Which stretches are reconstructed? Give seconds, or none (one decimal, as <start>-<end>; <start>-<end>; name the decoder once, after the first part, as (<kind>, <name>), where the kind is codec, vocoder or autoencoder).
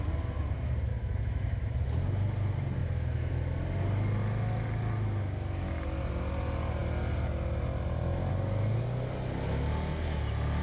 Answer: 0.9-1.7 (autoencoder, DAC-VAE); 2.8-3.3